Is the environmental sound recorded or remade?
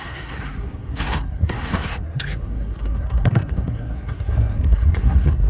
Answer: remade